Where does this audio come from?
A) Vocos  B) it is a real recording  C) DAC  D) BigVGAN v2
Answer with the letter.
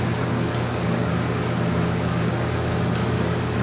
C